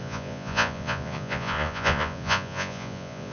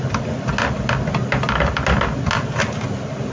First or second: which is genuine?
second